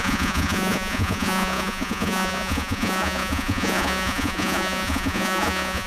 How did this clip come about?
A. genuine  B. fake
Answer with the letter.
B